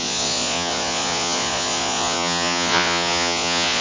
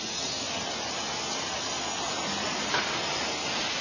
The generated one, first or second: first